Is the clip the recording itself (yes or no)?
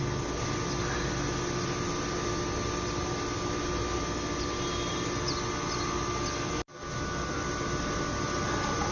yes